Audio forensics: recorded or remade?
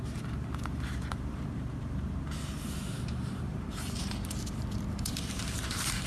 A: remade